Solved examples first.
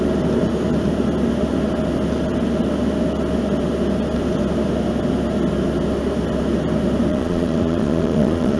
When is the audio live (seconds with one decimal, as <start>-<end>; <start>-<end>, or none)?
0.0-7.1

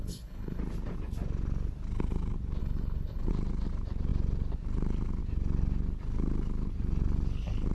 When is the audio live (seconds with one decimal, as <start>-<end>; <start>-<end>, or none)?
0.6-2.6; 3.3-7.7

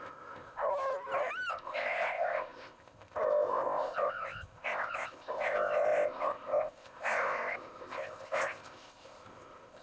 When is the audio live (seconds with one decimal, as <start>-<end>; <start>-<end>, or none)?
0.7-1.5